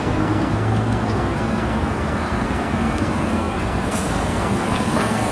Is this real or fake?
fake